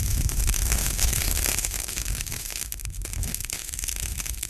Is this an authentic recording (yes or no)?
no